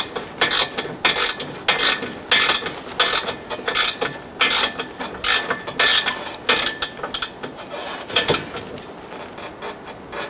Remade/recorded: recorded